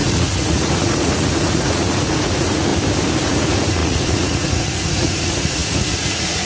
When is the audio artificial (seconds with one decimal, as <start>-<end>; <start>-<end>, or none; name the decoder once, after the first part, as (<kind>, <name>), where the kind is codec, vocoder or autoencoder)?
0.0-2.7 (vocoder, Vocos); 3.3-6.5